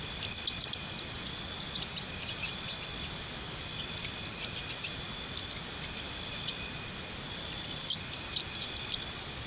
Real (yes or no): yes